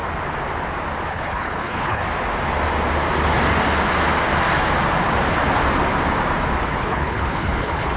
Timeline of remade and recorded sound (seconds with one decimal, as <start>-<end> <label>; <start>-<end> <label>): 0.0-1.1 recorded; 1.1-2.0 remade; 2.0-6.6 recorded; 6.6-8.0 remade